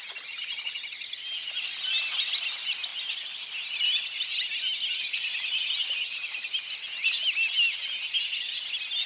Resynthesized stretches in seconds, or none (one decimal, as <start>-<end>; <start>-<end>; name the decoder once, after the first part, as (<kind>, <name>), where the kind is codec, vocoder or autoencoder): none